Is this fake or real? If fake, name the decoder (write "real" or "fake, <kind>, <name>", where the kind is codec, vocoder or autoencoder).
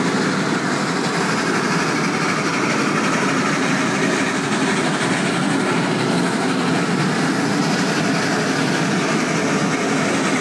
real